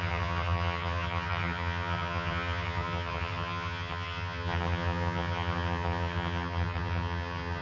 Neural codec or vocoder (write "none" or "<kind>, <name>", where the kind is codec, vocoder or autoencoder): vocoder, HiFi-GAN